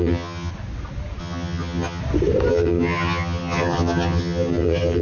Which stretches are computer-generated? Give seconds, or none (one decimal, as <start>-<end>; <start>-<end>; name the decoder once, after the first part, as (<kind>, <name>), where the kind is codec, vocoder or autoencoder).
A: 0.0-0.5 (vocoder, HiFi-GAN); 1.2-2.0; 2.5-5.0